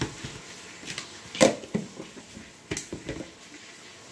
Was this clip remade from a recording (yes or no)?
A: no